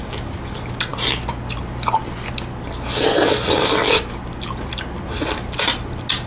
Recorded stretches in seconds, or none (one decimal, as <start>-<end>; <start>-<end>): 0.0-6.3